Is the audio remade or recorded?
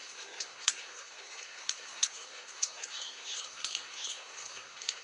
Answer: remade